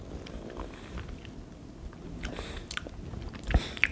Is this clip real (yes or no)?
yes